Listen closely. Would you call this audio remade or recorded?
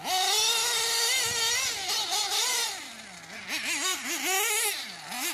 recorded